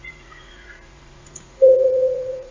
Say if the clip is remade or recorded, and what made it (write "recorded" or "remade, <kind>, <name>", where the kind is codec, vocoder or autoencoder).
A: remade, vocoder, Vocos